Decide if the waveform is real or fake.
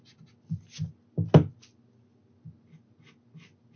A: real